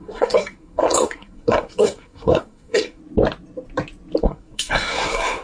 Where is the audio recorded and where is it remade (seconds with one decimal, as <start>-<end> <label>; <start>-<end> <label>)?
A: 0.0-3.0 remade; 3.0-4.2 recorded; 4.2-5.4 remade